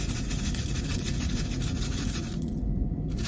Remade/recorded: remade